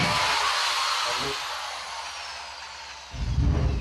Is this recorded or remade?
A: recorded